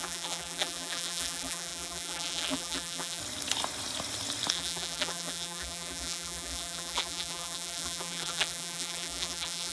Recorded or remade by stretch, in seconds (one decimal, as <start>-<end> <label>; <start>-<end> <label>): 0.0-3.2 remade; 3.2-4.5 recorded; 4.5-9.7 remade